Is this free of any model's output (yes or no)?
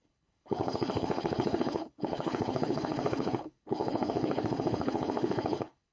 no